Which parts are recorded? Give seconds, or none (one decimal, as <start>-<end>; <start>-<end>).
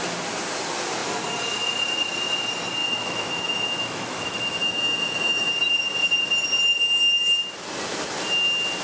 0.0-2.8; 5.5-8.8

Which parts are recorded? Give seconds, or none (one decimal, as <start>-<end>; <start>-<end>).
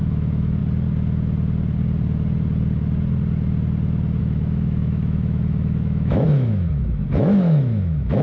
0.6-4.2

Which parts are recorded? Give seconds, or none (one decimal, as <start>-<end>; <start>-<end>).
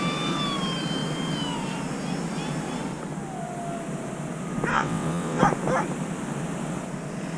0.0-4.7; 5.4-7.4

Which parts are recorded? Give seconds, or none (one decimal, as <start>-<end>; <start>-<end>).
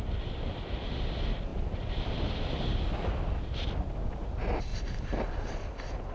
4.7-5.3